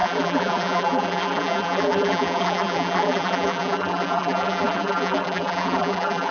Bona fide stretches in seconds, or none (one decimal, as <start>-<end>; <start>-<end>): none